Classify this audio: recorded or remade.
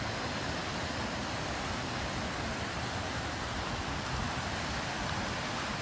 recorded